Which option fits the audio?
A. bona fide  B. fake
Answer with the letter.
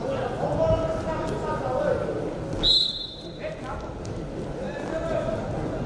A